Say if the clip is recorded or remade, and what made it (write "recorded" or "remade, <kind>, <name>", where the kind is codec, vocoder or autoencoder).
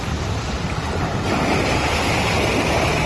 recorded